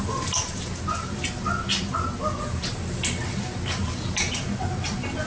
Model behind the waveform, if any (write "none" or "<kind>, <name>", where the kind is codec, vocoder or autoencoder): none